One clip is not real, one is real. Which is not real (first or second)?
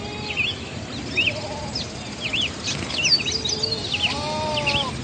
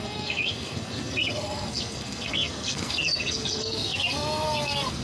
second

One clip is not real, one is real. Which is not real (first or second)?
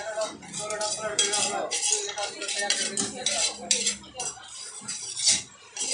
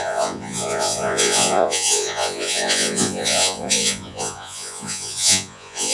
second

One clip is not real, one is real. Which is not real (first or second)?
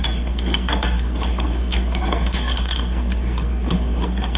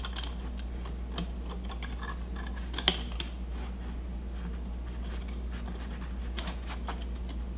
first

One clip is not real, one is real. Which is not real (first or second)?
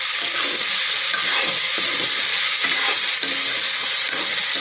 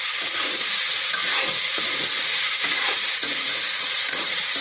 second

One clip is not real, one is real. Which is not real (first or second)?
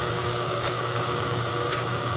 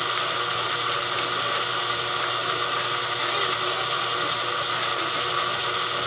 first